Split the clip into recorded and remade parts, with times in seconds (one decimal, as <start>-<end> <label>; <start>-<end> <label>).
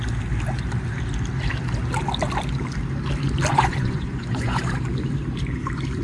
0.0-3.5 recorded; 3.5-4.6 remade; 4.6-6.0 recorded